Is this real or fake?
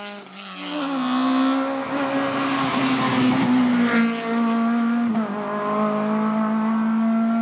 real